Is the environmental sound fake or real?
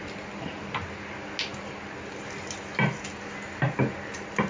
real